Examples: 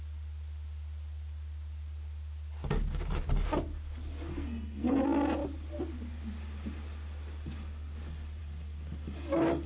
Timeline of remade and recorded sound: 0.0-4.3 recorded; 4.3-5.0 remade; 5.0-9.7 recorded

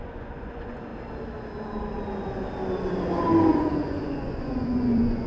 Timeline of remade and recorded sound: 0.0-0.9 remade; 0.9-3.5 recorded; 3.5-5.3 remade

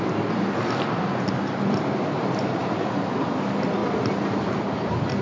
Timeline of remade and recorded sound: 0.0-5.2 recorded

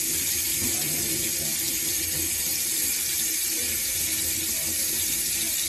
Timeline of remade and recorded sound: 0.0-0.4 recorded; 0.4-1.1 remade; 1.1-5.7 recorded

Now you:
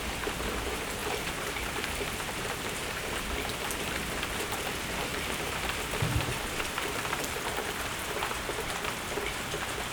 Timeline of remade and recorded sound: 0.0-1.0 recorded; 1.0-3.1 remade; 3.1-5.1 recorded; 5.1-7.8 remade; 7.8-9.9 recorded

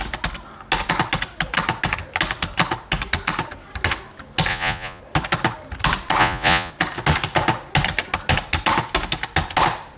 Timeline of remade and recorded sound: 0.0-4.5 recorded; 4.5-5.0 remade; 5.0-6.2 recorded; 6.2-6.7 remade; 6.7-10.0 recorded